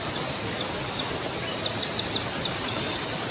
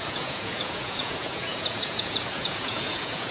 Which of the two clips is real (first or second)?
first